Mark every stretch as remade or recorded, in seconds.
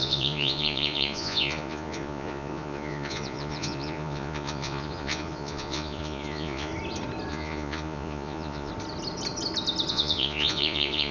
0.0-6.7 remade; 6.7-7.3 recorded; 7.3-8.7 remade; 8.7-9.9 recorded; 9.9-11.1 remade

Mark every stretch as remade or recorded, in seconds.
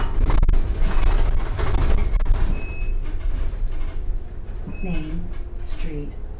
0.0-6.4 recorded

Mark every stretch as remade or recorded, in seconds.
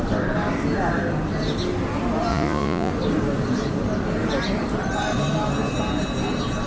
0.0-2.3 recorded; 2.3-2.9 remade; 2.9-6.7 recorded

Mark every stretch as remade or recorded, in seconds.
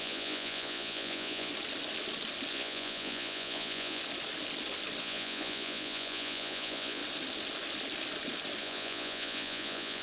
0.0-1.5 remade; 1.5-2.5 recorded; 2.5-4.0 remade; 4.0-5.0 recorded; 5.0-7.0 remade; 7.0-8.6 recorded; 8.6-10.0 remade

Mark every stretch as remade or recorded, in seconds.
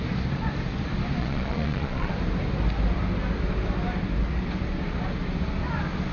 0.0-1.2 recorded; 1.2-2.1 remade; 2.1-6.1 recorded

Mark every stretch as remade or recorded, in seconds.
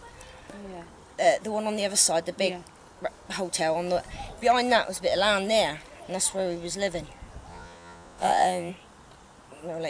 0.0-7.5 recorded; 7.5-8.7 remade; 8.7-9.9 recorded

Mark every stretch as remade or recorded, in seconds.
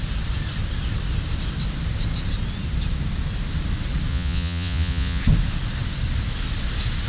0.0-4.1 recorded; 4.1-5.2 remade; 5.2-7.1 recorded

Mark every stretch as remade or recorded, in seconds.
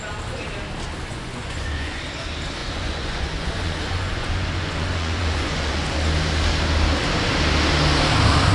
0.0-1.1 recorded; 1.1-2.0 remade; 2.0-2.6 recorded; 2.6-5.9 remade; 5.9-8.5 recorded